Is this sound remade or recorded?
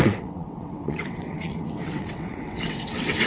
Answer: remade